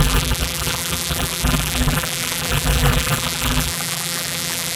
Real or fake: fake